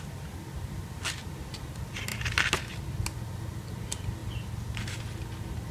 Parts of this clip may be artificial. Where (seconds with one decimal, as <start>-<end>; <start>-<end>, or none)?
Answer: none